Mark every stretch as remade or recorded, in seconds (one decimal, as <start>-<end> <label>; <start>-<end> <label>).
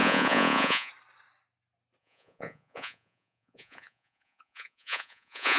0.0-0.9 remade; 0.9-2.0 recorded; 2.0-5.6 remade